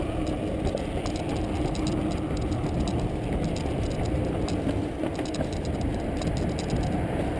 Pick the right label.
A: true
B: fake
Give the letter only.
A